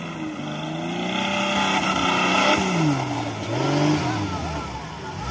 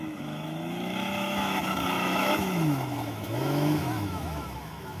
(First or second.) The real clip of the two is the first